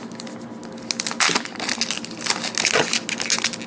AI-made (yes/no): no